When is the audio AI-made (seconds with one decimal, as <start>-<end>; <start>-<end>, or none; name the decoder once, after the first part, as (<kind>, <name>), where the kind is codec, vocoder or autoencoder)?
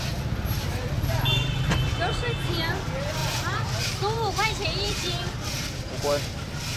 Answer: 0.0-6.8 (vocoder, BigVGAN v2)